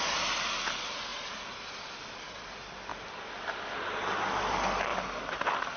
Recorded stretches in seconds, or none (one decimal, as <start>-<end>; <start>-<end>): 0.0-2.9; 3.4-4.9

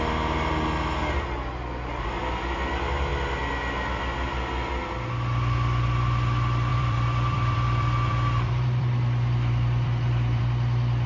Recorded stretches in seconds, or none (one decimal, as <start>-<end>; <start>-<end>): 0.0-6.7; 10.4-11.1